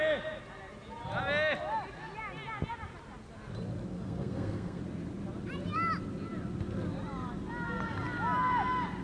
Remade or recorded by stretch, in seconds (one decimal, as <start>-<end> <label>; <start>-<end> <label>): 0.0-3.9 recorded; 3.9-4.8 remade; 4.8-9.0 recorded